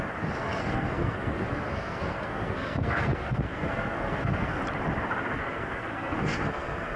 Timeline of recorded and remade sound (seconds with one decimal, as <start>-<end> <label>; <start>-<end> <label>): 0.0-0.4 recorded; 0.4-4.6 remade; 4.6-5.4 recorded; 5.4-7.0 remade